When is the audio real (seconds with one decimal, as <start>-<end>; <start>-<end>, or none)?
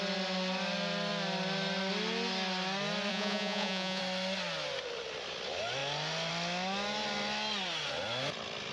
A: 0.0-3.1; 4.0-8.7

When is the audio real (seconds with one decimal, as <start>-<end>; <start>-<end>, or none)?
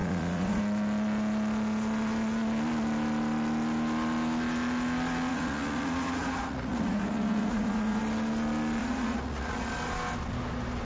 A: 0.6-5.3; 8.0-8.8; 9.7-10.8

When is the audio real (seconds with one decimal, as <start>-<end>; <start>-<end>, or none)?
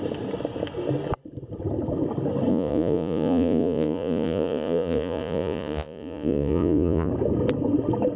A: 0.0-2.5; 7.1-8.2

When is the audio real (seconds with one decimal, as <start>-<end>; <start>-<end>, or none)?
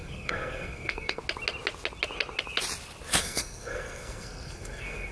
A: 1.2-3.2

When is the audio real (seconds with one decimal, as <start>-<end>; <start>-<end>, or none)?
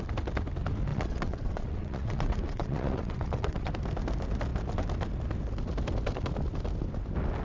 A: 0.0-0.9; 3.7-7.4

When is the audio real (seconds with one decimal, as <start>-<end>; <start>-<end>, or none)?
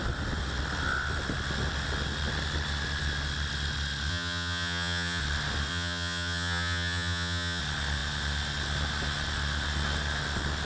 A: 0.0-4.1; 5.2-5.7; 7.6-10.6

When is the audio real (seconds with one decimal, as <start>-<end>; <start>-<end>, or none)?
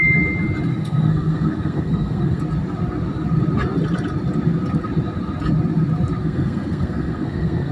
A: 0.0-0.7; 2.4-6.2